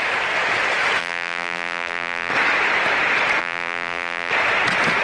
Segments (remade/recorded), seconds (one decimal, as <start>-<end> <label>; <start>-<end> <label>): 0.0-1.0 recorded; 1.0-2.3 remade; 2.3-3.4 recorded; 3.4-4.3 remade; 4.3-5.0 recorded

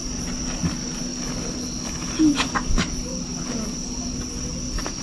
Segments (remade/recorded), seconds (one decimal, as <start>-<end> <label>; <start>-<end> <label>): 0.0-5.0 recorded

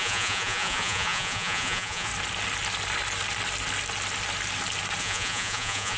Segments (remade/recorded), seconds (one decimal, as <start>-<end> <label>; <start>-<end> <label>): 0.0-2.1 remade; 2.1-5.0 recorded; 5.0-6.0 remade